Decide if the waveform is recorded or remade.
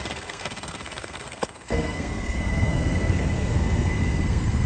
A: remade